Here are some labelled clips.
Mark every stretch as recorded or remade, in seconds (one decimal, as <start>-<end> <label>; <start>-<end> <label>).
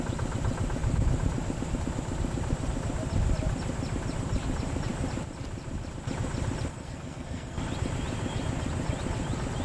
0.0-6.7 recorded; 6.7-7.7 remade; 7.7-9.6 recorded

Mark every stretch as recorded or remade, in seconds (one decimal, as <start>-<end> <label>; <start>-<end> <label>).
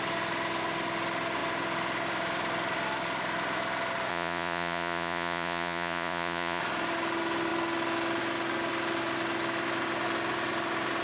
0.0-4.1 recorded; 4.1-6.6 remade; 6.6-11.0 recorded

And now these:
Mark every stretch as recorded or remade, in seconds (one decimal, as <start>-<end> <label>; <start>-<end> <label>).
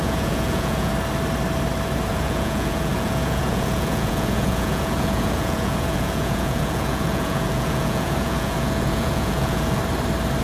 0.0-0.9 remade; 0.9-2.1 recorded; 2.1-9.8 remade; 9.8-10.4 recorded